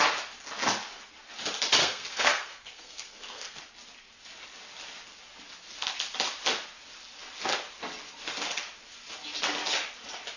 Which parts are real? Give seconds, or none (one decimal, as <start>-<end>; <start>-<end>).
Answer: 0.0-1.8; 3.6-10.4